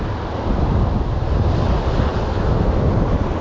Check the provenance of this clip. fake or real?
real